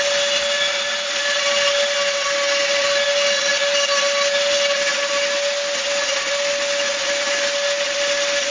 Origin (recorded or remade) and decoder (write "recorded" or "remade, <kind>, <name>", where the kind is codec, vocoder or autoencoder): recorded